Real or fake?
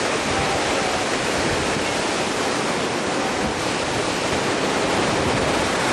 real